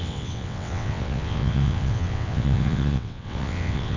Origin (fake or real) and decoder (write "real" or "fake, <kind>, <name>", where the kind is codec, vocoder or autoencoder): fake, vocoder, WaveNeXt